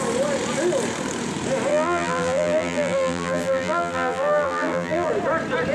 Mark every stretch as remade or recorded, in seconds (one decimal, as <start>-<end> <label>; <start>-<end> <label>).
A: 0.0-1.7 recorded; 1.7-5.1 remade; 5.1-5.7 recorded